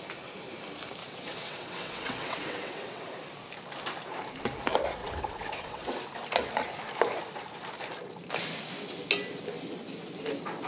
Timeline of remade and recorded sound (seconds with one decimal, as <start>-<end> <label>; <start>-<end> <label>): 0.0-1.0 recorded; 1.0-3.0 remade; 3.0-5.0 recorded; 5.0-5.9 remade; 5.9-10.7 recorded

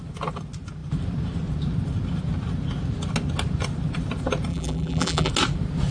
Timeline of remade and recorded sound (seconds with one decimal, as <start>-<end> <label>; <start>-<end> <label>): 0.0-4.5 recorded; 4.5-5.3 remade; 5.3-5.9 recorded

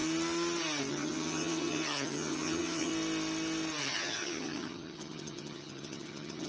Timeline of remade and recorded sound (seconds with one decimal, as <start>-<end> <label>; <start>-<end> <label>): 0.0-0.9 recorded; 0.9-2.9 remade; 2.9-3.8 recorded; 3.8-6.5 remade

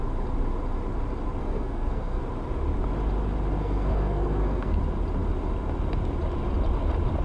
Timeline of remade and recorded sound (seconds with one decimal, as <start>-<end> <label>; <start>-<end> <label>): 0.0-1.4 recorded; 1.4-2.2 remade; 2.2-3.6 recorded; 3.6-4.8 remade; 4.8-7.2 recorded